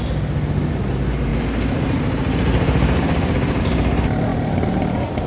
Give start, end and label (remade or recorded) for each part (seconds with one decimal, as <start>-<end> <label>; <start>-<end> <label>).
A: 0.0-1.3 recorded; 1.3-3.6 remade; 3.6-4.3 recorded; 4.3-5.3 remade